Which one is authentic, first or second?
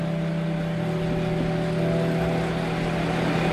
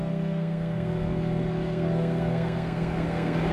first